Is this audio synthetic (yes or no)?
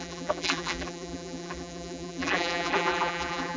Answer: yes